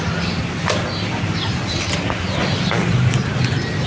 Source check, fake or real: real